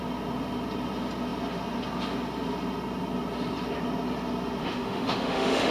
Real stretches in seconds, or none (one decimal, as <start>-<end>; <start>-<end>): 0.0-4.6